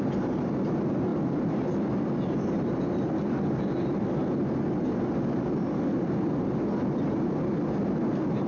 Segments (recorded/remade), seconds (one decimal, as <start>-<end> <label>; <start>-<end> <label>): 0.0-8.5 recorded